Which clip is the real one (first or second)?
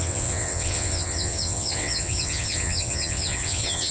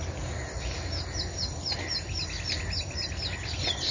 second